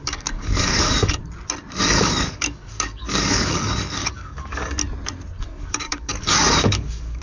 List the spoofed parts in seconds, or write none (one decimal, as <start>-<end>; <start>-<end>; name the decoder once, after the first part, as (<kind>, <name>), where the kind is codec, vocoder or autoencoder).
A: 0.0-1.2 (codec, DAC); 2.0-4.8; 5.4-7.2